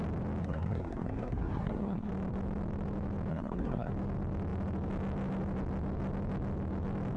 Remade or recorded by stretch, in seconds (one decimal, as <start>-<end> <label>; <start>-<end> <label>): 0.0-0.4 recorded; 0.4-2.1 remade; 2.1-3.3 recorded; 3.3-3.9 remade; 3.9-7.2 recorded